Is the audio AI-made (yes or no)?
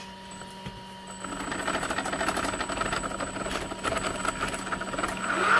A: no